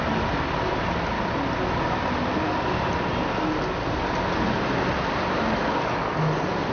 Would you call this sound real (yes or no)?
yes